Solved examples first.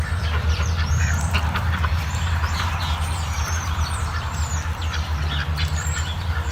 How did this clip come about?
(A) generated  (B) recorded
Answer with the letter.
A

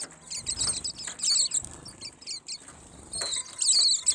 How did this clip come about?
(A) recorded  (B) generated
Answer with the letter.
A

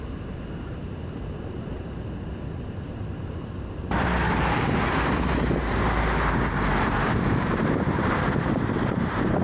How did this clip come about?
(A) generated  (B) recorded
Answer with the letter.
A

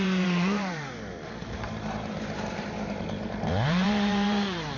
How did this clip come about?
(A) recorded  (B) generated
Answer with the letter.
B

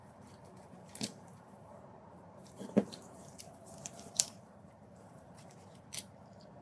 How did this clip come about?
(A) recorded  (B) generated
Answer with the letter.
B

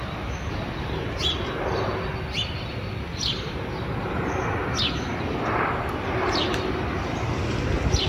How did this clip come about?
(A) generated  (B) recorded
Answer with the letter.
B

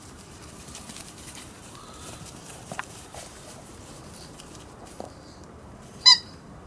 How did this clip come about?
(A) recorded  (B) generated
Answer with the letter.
B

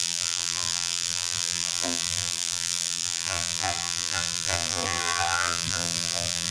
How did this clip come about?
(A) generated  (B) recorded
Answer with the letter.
A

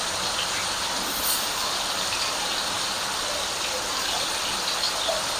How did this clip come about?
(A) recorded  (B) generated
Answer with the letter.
B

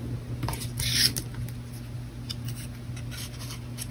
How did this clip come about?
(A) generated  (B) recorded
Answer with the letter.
B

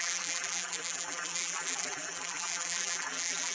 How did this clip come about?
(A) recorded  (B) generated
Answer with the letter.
B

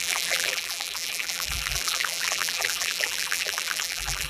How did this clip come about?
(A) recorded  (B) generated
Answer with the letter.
B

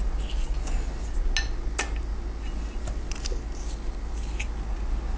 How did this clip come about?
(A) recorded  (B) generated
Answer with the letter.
A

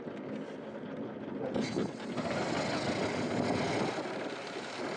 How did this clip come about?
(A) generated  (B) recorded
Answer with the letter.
B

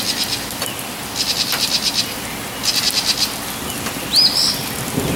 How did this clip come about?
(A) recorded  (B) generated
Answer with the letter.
A